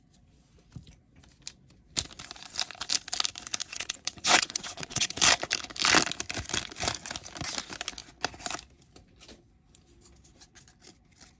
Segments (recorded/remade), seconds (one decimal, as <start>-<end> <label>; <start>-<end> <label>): 0.0-3.6 recorded; 3.6-5.2 remade; 5.2-11.4 recorded